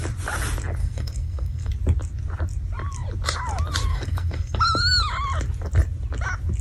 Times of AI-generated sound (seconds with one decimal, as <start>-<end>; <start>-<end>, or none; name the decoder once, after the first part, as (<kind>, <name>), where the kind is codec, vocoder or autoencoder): 0.8-1.7 (codec, SNAC); 3.9-4.6